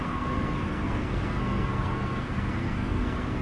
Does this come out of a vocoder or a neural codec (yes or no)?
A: yes